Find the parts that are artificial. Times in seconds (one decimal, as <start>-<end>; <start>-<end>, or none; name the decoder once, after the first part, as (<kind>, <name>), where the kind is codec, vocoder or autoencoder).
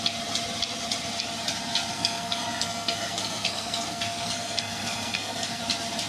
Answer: 1.9-5.6 (codec, SNAC)